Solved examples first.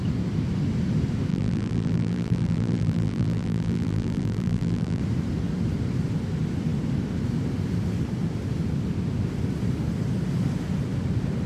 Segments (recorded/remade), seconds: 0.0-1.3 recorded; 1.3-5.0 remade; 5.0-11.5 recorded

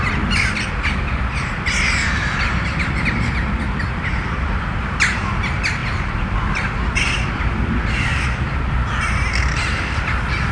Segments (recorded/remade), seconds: 0.0-10.5 recorded

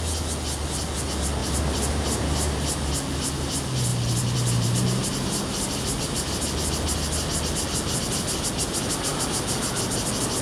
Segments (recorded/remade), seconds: 0.0-1.4 recorded; 1.4-2.9 remade; 2.9-3.9 recorded; 3.9-6.5 remade; 6.5-10.4 recorded

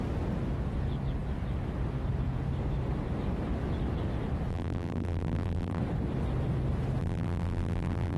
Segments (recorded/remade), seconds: 0.0-4.5 recorded; 4.5-5.8 remade; 5.8-7.0 recorded; 7.0-8.2 remade

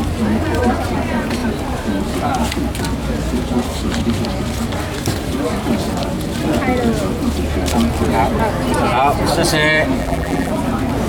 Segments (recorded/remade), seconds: 0.0-10.0 recorded; 10.0-10.5 remade; 10.5-11.1 recorded

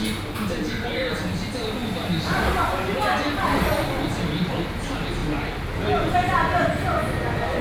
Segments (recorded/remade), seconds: 0.0-7.6 recorded

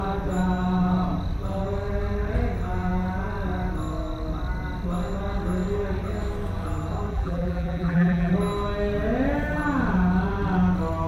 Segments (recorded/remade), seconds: 0.0-7.1 recorded; 7.1-8.3 remade; 8.3-11.1 recorded